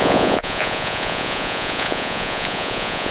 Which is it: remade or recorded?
remade